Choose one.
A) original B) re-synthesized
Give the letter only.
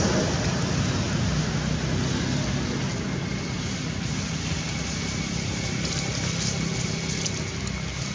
A